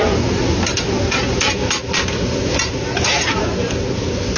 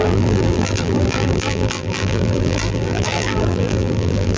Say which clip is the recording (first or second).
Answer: first